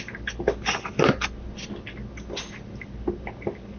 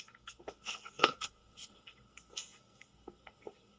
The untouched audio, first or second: first